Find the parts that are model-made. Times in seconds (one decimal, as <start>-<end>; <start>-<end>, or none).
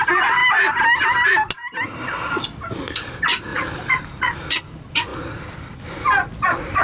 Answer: 3.5-4.6; 5.1-6.8